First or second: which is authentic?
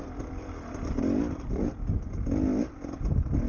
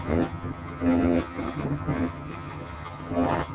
first